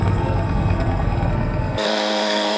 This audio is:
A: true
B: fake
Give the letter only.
B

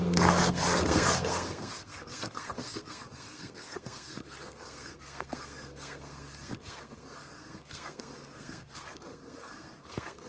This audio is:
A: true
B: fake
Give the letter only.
B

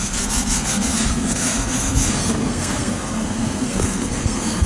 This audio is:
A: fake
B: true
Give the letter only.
A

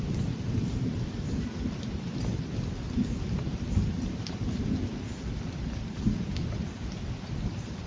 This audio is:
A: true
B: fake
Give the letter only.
A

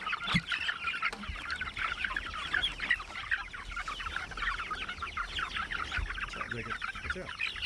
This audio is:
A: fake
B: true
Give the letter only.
B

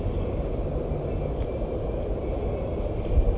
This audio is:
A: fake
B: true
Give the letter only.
B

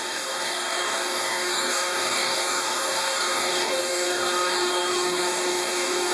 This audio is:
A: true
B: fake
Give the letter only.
B